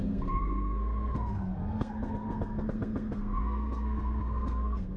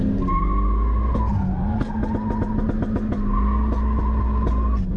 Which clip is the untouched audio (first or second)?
second